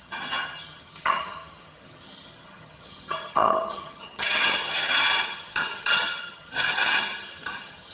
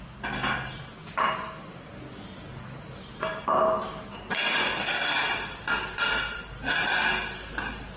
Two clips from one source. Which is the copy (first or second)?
first